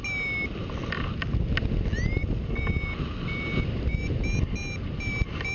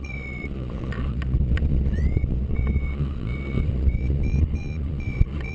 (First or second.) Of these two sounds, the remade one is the second